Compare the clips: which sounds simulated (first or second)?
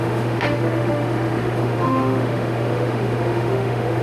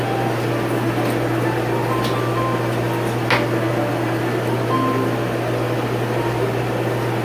first